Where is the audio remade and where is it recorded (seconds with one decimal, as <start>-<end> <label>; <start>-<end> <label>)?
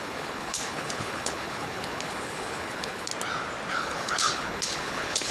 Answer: 0.0-3.1 remade; 3.1-3.7 recorded; 3.7-5.3 remade